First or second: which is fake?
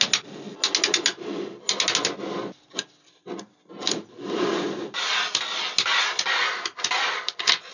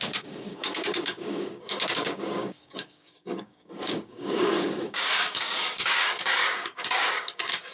second